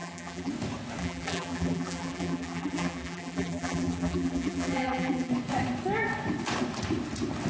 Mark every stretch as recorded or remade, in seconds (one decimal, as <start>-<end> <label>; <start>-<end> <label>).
0.0-0.5 remade; 0.5-1.0 recorded; 1.0-5.3 remade; 5.3-7.5 recorded